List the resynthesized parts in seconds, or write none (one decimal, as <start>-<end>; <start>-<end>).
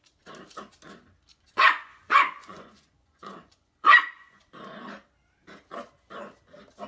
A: 1.3-4.4